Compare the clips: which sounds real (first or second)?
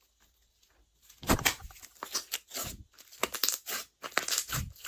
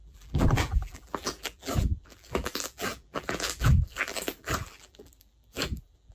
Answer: first